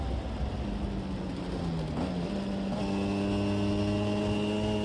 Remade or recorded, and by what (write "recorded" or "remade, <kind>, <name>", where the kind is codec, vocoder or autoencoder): recorded